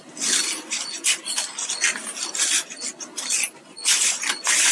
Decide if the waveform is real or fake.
real